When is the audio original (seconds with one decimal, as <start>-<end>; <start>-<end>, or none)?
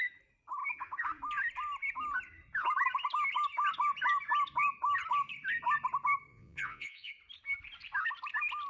0.0-6.3; 7.1-8.7